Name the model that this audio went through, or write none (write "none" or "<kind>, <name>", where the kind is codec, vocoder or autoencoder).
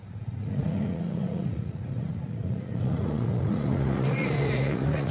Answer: vocoder, Vocos